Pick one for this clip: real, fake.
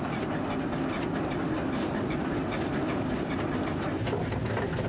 real